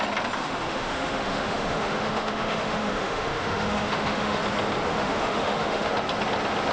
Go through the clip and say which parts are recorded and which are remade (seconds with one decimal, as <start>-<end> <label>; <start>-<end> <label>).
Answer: 0.0-0.4 recorded; 0.4-4.4 remade; 4.4-4.9 recorded; 4.9-5.9 remade; 5.9-6.7 recorded